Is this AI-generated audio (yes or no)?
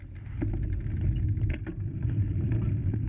no